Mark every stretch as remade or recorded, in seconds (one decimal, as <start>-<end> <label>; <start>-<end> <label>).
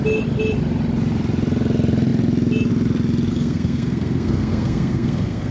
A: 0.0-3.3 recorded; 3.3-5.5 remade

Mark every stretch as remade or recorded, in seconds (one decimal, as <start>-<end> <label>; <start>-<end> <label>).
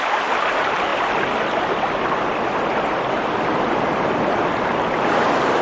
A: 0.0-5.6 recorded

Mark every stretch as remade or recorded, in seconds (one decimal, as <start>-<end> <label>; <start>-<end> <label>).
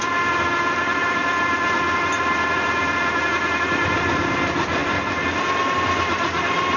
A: 0.0-6.8 recorded